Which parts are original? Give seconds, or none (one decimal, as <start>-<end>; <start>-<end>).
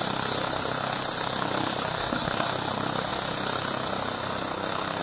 0.0-2.0; 2.5-5.0